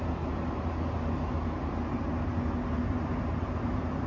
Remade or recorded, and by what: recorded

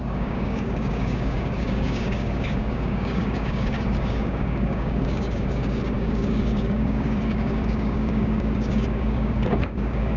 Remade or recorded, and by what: remade, codec, DAC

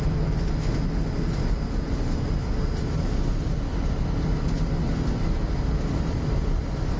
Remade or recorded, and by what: recorded